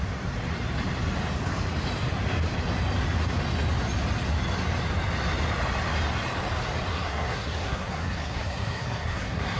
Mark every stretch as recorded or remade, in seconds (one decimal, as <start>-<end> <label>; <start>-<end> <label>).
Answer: 0.0-6.9 recorded; 6.9-9.6 remade